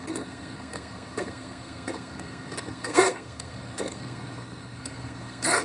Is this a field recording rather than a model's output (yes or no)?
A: no